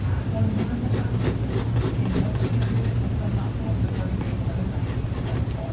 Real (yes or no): yes